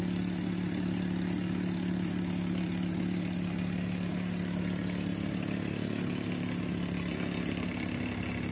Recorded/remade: recorded